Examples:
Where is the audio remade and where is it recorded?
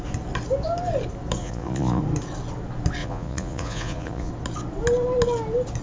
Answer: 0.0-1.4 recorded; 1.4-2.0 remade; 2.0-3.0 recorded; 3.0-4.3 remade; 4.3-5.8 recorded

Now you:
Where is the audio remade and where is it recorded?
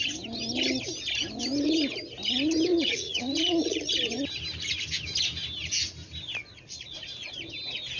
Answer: 0.0-2.7 recorded; 2.7-3.9 remade; 3.9-6.5 recorded; 6.5-7.3 remade; 7.3-8.0 recorded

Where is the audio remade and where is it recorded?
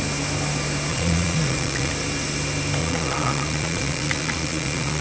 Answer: 0.0-0.9 recorded; 0.9-1.9 remade; 1.9-2.8 recorded; 2.8-5.0 remade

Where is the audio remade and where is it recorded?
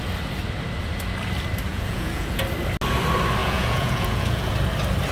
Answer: 0.0-1.7 recorded; 1.7-2.4 remade; 2.4-3.4 recorded; 3.4-4.5 remade; 4.5-5.1 recorded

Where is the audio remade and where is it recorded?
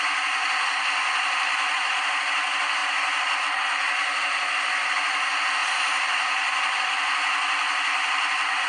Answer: 0.0-8.7 recorded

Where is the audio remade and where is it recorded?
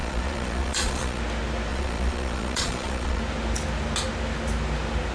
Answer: 0.0-1.2 remade; 1.2-1.7 recorded; 1.7-3.2 remade; 3.2-5.1 recorded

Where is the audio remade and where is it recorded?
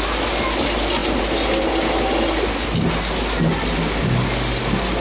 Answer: 0.0-5.0 recorded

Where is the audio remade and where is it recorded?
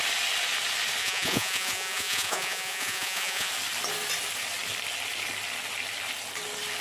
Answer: 0.0-1.0 recorded; 1.0-3.5 remade; 3.5-6.8 recorded